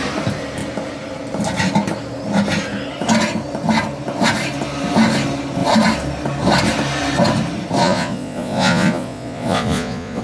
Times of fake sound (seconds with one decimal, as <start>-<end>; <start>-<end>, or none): 7.8-10.2